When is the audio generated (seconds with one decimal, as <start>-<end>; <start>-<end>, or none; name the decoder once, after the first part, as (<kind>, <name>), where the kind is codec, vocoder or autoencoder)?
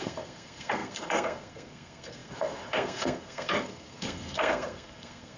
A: 0.0-5.4 (codec, SNAC)